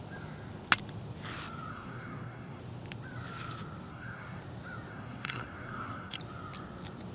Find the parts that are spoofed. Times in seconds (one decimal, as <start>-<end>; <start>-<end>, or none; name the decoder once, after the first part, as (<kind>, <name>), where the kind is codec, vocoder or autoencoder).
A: 1.7-2.6 (codec, SNAC); 3.9-4.4; 4.9-6.2